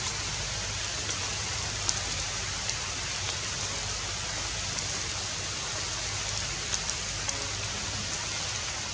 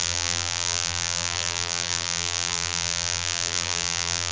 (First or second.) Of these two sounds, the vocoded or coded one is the second